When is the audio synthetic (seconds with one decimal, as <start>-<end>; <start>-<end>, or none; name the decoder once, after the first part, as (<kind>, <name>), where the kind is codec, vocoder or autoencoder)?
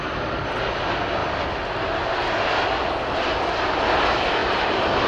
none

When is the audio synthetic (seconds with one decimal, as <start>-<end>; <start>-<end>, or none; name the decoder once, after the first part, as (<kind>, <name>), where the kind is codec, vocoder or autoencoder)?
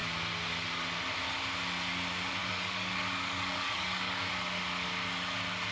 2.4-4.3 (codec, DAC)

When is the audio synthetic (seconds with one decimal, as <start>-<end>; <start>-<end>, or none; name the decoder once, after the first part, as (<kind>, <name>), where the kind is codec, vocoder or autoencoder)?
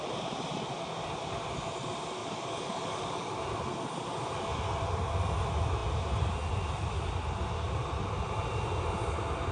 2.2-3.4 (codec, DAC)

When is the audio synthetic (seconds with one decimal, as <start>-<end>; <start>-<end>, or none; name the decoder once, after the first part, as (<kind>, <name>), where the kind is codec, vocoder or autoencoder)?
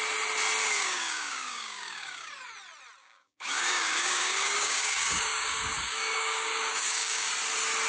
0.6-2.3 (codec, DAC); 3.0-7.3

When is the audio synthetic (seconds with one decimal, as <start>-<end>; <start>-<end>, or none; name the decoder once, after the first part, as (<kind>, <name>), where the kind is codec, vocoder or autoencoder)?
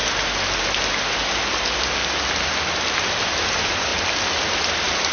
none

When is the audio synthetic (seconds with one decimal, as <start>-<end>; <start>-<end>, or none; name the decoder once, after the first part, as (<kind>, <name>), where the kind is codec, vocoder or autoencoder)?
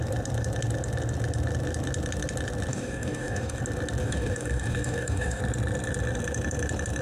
2.7-3.6 (codec, DAC); 4.0-5.4